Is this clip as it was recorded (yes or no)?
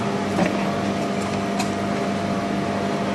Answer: yes